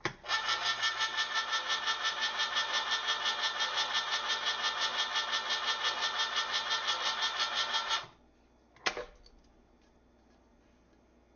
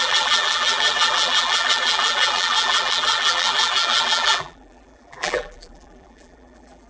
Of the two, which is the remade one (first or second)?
second